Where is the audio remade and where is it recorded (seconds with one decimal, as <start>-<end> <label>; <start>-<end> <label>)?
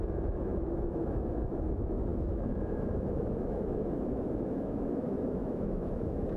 0.0-6.4 remade